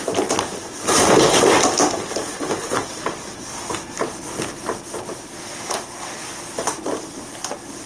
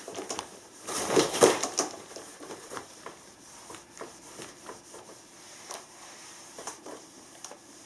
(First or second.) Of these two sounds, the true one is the first